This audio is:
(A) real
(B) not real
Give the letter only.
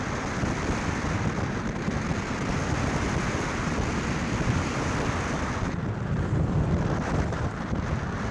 A